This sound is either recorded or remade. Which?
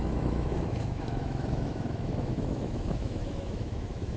remade